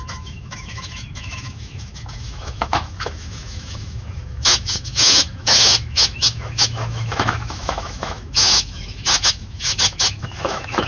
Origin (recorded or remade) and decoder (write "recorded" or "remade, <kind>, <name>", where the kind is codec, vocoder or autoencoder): remade, autoencoder, DAC-VAE